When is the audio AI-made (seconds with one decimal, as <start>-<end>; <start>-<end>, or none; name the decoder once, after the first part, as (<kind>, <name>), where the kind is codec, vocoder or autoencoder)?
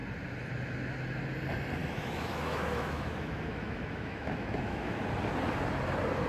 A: 1.8-5.0 (autoencoder, DAC-VAE)